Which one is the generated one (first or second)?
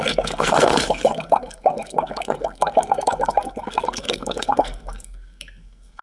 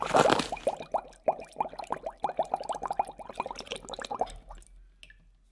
first